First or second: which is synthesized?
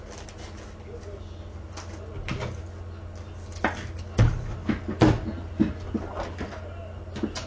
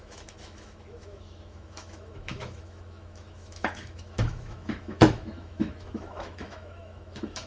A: second